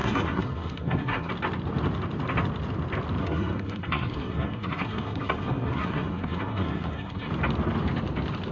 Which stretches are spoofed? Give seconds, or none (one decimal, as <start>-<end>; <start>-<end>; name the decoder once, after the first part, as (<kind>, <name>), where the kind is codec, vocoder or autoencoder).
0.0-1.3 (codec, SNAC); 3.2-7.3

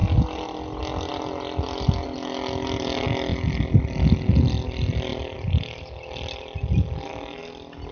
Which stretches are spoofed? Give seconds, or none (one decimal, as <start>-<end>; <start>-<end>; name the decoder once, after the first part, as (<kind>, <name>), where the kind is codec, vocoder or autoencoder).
none

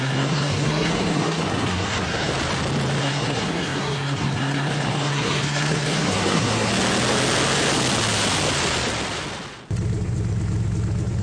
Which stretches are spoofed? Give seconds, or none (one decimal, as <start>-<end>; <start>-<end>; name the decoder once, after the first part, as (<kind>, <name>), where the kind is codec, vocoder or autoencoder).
0.0-2.3 (codec, SNAC); 3.0-6.7

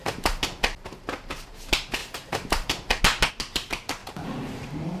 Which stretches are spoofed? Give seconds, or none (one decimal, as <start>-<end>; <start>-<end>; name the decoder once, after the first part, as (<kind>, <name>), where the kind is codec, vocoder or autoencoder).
2.0-3.0 (vocoder, BigVGAN v2); 4.0-5.0

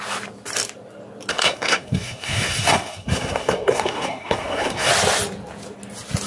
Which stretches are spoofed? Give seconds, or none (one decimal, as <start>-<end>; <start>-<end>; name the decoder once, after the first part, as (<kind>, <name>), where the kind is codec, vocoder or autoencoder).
1.3-4.9 (codec, SNAC)